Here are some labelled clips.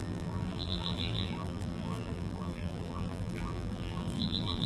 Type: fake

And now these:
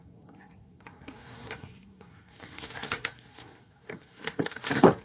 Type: fake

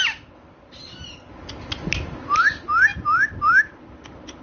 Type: real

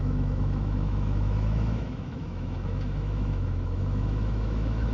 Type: fake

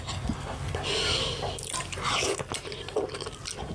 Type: real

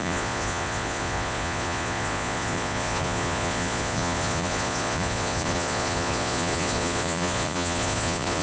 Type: fake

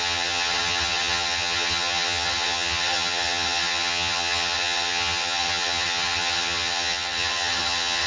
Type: fake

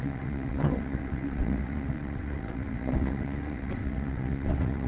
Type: fake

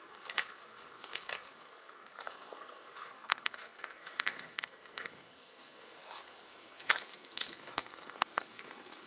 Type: fake